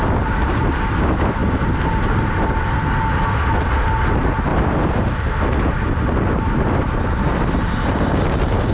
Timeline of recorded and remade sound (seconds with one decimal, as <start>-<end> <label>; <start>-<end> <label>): 0.0-8.7 recorded